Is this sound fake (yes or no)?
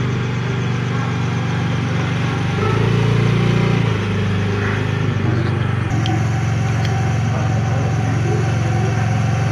no